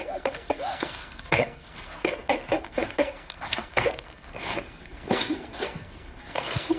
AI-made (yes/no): yes